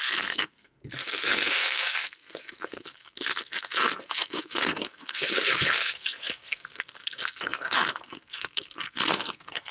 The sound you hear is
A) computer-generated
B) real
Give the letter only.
A